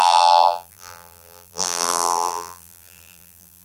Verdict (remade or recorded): remade